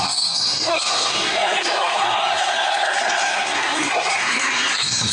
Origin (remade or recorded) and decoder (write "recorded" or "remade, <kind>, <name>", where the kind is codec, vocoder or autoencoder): remade, codec, SNAC